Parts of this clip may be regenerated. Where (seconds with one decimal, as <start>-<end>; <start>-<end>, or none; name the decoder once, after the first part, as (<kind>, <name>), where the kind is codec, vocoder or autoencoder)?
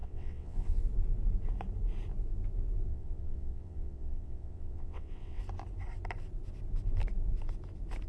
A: 0.0-0.8 (vocoder, WaveNeXt); 2.9-5.4